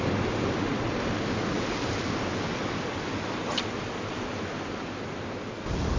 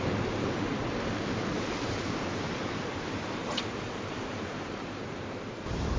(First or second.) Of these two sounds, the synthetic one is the second